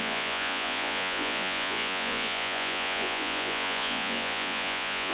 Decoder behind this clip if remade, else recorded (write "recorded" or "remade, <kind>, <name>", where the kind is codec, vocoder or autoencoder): remade, vocoder, Vocos